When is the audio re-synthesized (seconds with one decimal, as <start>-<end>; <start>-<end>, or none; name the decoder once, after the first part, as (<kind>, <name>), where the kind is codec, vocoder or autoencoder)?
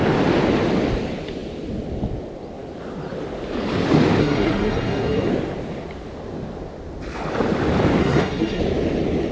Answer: 4.2-5.3 (codec, SNAC); 8.0-8.6